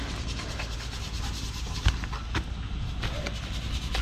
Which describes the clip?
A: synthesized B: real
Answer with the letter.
B